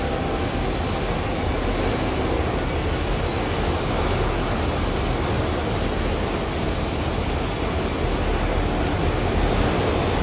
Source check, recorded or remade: recorded